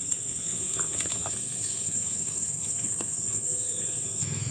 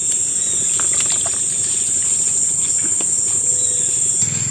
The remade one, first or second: first